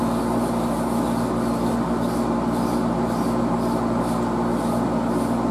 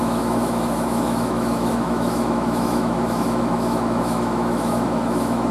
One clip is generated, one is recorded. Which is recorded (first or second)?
first